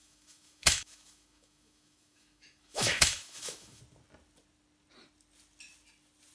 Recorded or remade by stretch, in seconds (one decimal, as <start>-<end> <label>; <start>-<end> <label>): 0.0-3.8 remade; 3.8-6.3 recorded